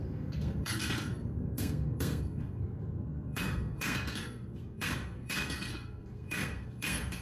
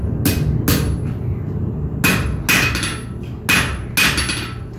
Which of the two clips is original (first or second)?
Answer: second